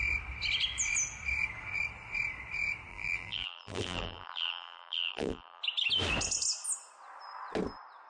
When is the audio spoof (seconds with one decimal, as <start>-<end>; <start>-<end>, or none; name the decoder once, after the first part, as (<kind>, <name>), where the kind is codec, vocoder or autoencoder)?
2.9-5.6 (vocoder, BigVGAN v2)